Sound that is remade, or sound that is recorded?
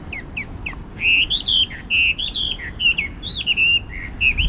recorded